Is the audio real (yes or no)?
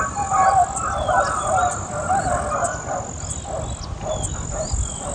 yes